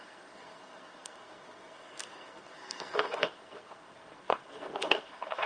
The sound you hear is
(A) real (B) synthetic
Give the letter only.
B